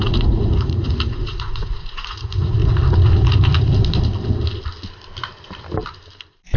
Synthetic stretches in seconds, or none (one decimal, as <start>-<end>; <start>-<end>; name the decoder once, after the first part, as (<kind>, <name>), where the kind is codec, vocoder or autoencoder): 0.0-2.6 (vocoder, Vocos)

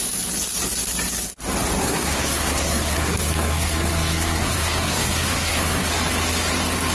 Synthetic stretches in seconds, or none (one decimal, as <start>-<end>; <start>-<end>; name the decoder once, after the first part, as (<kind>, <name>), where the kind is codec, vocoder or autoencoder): 1.8-5.9 (codec, SNAC)

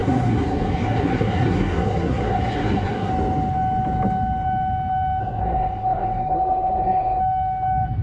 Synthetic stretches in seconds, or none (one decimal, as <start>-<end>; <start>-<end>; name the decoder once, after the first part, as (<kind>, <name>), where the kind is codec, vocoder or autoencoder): 0.0-3.1 (codec, SNAC); 5.2-7.2

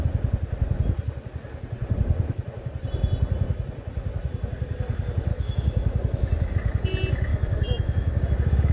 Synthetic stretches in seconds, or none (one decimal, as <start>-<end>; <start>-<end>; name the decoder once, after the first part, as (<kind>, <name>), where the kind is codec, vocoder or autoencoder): 5.3-6.5 (autoencoder, DAC-VAE); 7.3-8.2

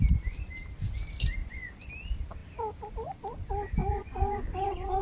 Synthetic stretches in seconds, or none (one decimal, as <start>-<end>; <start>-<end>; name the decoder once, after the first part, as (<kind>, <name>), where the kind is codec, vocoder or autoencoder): 1.4-1.9 (vocoder, Vocos); 3.8-5.0

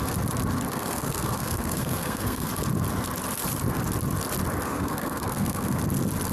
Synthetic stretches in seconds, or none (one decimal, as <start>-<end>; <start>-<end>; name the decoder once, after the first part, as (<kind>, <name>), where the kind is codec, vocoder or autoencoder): 0.7-2.5 (codec, SNAC); 4.7-5.8

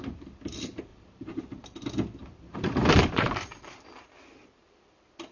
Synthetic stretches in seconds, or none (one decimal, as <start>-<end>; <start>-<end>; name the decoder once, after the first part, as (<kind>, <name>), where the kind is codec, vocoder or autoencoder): 0.9-1.4 (vocoder, BigVGAN v2); 2.2-4.0